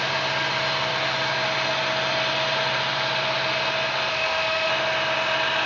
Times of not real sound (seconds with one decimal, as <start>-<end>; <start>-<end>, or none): 4.1-4.7